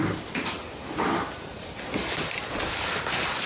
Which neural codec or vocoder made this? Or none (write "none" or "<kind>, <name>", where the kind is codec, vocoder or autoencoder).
none